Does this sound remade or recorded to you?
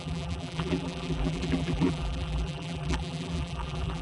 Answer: remade